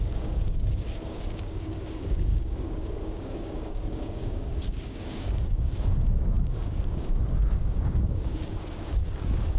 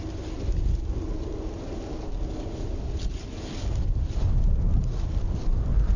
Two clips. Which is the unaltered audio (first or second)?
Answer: second